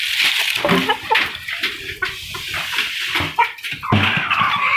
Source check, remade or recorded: remade